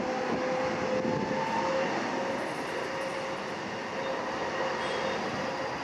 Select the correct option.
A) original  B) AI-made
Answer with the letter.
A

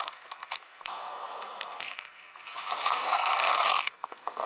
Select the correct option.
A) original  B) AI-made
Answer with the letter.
B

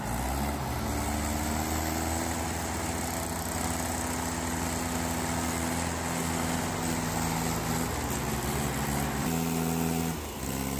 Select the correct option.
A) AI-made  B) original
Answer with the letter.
B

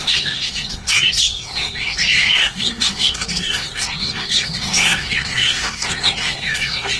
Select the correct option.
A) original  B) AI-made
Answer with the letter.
B